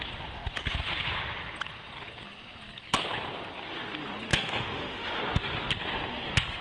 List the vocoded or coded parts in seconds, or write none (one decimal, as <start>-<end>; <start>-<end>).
4.3-5.2